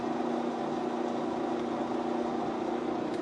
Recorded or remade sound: recorded